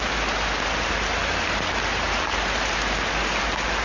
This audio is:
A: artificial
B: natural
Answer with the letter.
B